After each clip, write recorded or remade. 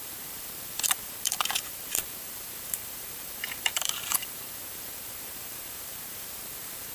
remade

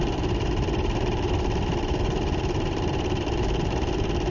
remade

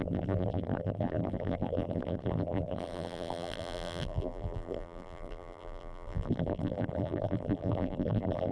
remade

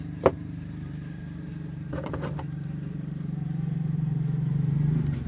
remade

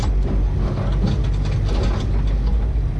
recorded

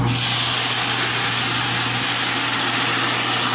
recorded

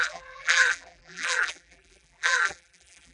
remade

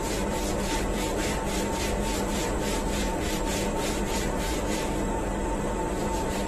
remade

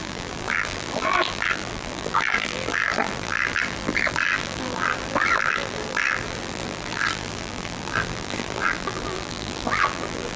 remade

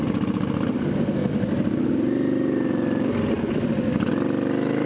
recorded